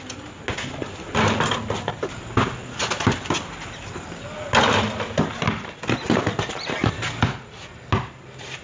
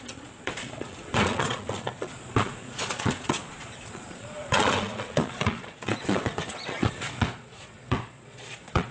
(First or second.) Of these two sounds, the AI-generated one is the second